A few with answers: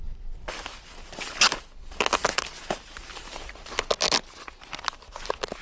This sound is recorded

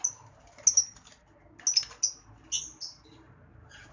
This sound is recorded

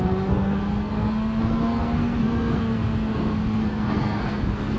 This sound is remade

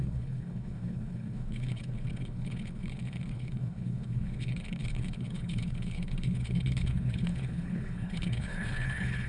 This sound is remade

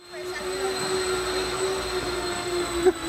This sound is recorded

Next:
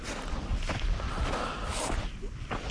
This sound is recorded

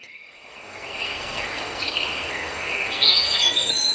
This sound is remade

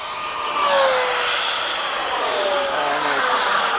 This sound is recorded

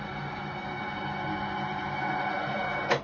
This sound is recorded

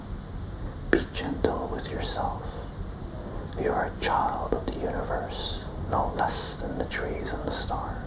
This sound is recorded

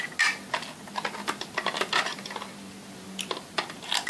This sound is recorded